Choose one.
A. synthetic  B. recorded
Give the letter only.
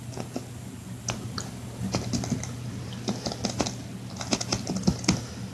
B